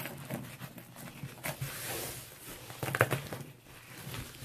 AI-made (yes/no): no